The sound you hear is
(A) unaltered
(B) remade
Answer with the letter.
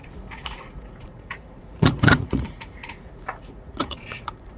B